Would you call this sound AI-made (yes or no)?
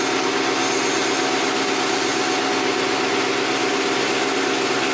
no